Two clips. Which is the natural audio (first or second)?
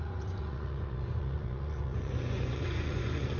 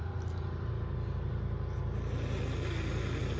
second